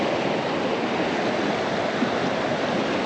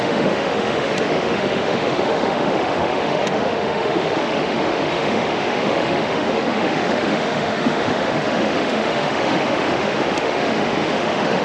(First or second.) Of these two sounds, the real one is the first